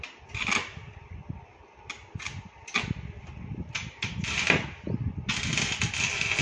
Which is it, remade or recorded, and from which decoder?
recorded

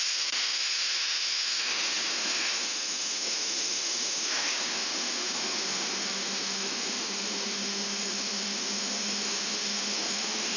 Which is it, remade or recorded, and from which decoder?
remade, autoencoder, DAC-VAE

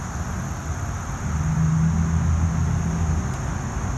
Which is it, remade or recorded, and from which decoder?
recorded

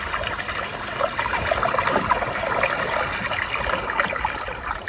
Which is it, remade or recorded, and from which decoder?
recorded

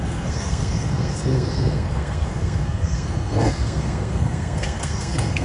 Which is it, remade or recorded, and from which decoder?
remade, codec, SNAC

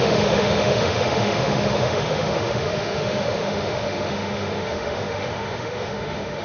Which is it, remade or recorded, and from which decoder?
remade, autoencoder, DAC-VAE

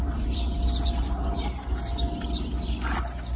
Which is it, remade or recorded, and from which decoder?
remade, vocoder, BigVGAN v2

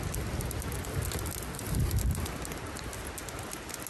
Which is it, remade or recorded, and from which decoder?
recorded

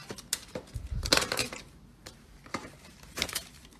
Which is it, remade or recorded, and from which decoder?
remade, vocoder, BigVGAN v2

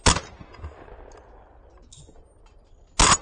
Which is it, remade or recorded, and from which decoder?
recorded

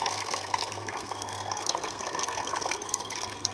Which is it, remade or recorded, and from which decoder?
remade, codec, SNAC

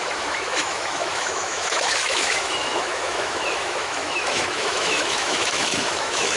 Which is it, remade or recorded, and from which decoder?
remade, autoencoder, DAC-VAE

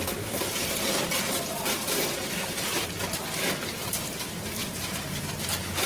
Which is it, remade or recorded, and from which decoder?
remade, vocoder, BigVGAN v2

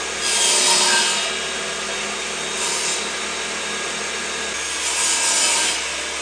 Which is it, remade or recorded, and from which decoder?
recorded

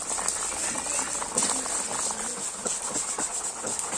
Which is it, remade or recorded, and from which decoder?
recorded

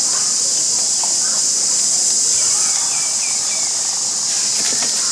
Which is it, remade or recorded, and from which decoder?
recorded